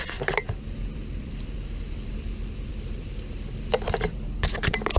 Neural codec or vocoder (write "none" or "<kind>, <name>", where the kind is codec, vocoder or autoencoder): vocoder, BigVGAN v2